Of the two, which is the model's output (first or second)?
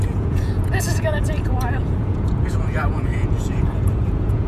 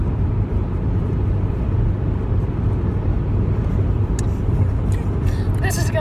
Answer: first